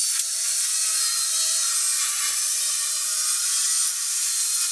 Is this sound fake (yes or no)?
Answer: no